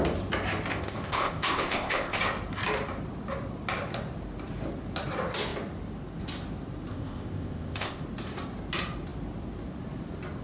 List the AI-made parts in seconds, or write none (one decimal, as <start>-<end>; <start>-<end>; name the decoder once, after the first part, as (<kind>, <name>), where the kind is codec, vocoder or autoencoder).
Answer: 0.7-2.2 (codec, ZipCodec); 6.9-8.0